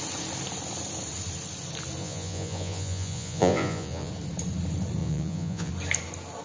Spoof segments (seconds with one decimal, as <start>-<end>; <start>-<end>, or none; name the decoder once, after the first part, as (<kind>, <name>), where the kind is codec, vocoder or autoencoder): 2.0-4.1 (vocoder, Vocos); 5.0-5.7